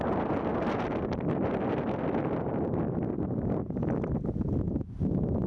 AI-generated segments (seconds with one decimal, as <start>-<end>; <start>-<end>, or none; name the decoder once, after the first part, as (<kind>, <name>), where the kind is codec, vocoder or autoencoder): none